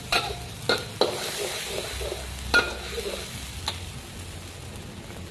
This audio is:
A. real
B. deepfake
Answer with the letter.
A